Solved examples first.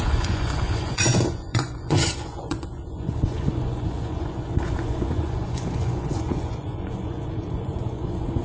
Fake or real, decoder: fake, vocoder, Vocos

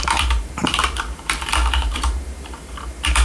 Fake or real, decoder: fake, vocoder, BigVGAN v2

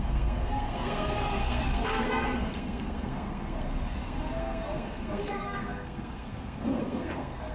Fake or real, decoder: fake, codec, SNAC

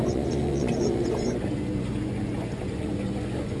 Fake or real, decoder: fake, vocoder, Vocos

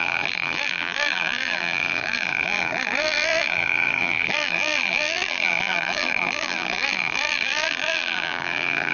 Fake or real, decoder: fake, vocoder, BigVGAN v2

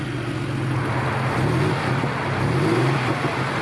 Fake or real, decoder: real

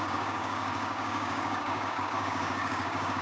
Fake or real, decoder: fake, codec, DAC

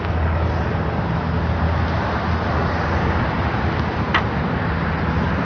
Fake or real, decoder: real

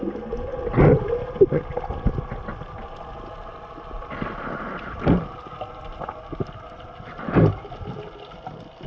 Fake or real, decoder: real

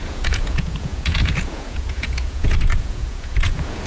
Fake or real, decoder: fake, vocoder, Vocos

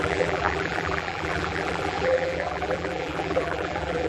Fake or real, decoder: fake, vocoder, BigVGAN v2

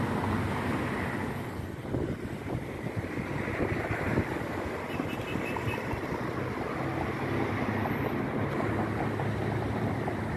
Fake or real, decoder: real